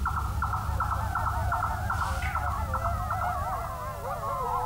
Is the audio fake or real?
real